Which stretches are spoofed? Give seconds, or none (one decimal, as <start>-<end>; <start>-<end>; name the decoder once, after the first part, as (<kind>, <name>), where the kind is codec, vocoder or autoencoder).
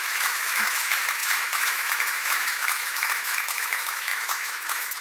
0.0-5.0 (autoencoder, DAC-VAE)